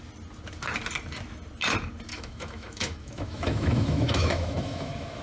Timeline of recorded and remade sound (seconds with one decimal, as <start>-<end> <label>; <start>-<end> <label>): 0.0-2.1 recorded; 2.1-5.2 remade